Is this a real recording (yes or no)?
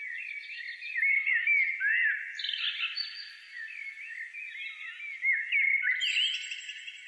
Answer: yes